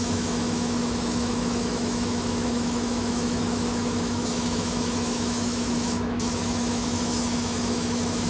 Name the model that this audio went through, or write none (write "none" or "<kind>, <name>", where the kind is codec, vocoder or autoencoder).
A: autoencoder, DAC-VAE